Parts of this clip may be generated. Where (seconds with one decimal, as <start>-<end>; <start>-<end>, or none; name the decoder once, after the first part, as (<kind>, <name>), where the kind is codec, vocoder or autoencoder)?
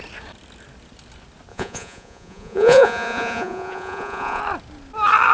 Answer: 1.5-4.4 (vocoder, Vocos)